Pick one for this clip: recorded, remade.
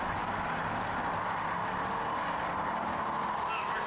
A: recorded